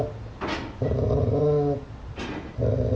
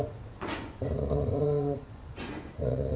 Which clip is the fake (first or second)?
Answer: second